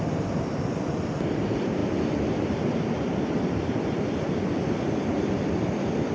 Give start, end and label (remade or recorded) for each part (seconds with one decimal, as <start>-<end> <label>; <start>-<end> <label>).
0.0-6.1 remade

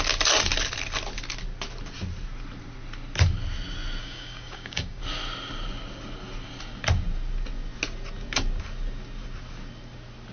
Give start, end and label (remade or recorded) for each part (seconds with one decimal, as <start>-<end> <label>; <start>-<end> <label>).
0.0-4.0 recorded; 4.0-5.0 remade; 5.0-10.3 recorded

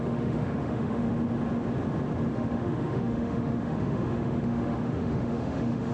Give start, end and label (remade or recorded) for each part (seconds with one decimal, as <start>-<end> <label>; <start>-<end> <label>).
0.0-1.1 remade; 1.1-2.3 recorded; 2.3-5.9 remade